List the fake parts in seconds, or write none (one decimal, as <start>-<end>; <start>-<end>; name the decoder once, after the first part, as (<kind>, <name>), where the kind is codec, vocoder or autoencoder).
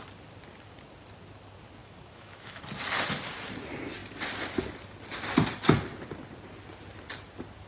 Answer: 1.8-2.6 (autoencoder, DAC-VAE)